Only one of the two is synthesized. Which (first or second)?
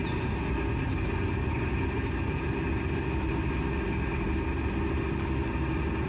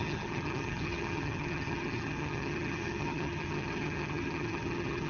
second